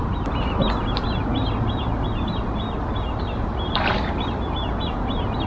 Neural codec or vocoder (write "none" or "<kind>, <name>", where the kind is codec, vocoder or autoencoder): none